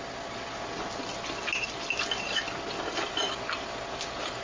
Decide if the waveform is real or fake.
real